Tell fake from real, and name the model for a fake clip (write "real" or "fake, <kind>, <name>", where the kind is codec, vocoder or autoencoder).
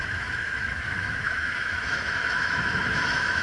fake, autoencoder, DAC-VAE